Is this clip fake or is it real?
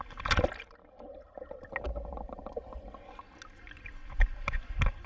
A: real